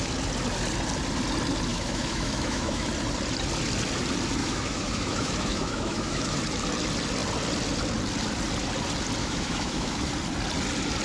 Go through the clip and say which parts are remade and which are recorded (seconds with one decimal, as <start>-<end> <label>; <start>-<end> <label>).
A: 0.0-1.7 recorded; 1.7-2.9 remade; 2.9-4.4 recorded; 4.4-6.4 remade; 6.4-9.2 recorded; 9.2-10.1 remade; 10.1-11.0 recorded